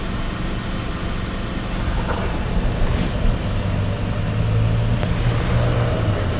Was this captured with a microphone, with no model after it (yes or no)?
yes